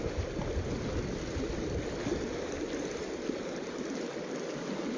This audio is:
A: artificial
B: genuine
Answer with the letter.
B